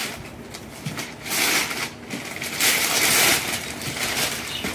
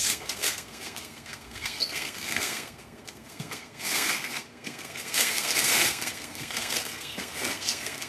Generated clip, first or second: second